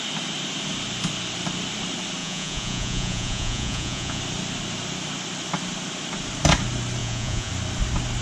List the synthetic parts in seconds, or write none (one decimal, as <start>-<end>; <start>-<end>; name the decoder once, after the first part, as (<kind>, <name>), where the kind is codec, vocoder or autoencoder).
2.2-4.2 (vocoder, Vocos); 7.0-7.5